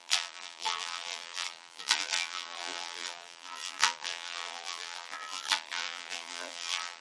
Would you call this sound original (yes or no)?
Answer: no